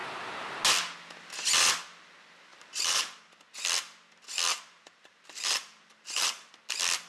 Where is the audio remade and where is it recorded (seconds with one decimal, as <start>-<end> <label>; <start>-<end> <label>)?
0.0-0.6 remade; 0.6-2.5 recorded; 2.5-3.4 remade; 3.4-4.5 recorded; 4.5-6.5 remade; 6.5-7.1 recorded